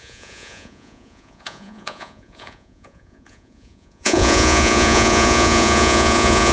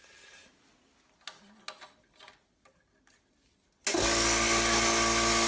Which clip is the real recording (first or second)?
second